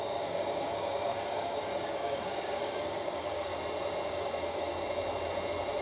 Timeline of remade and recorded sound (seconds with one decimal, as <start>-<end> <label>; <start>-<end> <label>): 0.0-3.5 remade; 3.5-4.1 recorded; 4.1-4.7 remade; 4.7-5.8 recorded